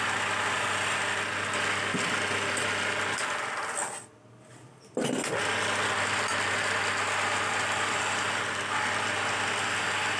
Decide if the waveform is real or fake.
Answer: real